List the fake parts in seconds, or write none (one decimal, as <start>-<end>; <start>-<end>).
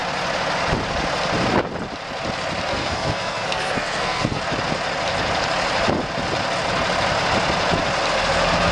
2.7-4.4